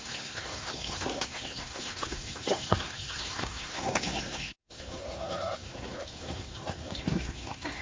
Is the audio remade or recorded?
remade